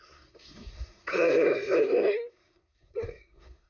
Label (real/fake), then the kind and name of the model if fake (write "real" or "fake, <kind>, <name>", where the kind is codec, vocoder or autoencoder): fake, codec, SNAC